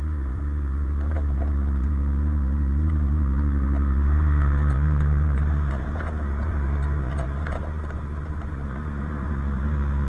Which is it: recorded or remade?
remade